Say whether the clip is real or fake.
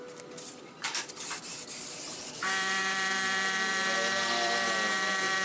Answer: fake